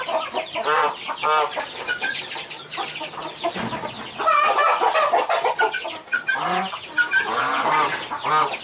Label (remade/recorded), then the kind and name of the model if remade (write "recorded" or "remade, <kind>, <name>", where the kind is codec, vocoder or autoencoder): recorded